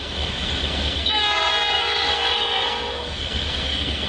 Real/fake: fake